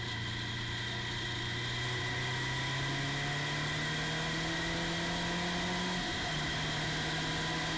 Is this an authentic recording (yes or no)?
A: yes